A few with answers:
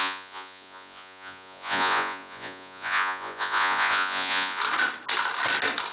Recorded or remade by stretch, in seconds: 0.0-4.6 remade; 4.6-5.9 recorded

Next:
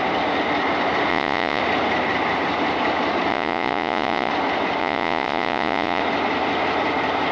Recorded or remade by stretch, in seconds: 0.0-1.1 recorded; 1.1-1.6 remade; 1.6-3.3 recorded; 3.3-4.3 remade; 4.3-4.8 recorded; 4.8-6.0 remade; 6.0-7.3 recorded

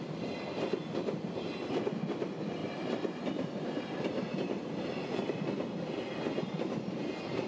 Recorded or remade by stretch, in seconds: 0.0-7.5 recorded

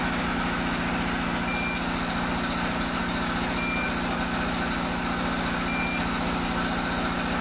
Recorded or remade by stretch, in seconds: 0.0-7.4 recorded